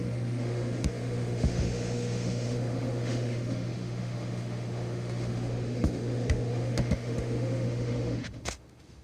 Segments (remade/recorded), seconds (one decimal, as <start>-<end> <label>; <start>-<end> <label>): 0.0-9.0 remade